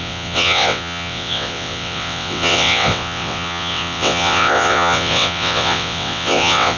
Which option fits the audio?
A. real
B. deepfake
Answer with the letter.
B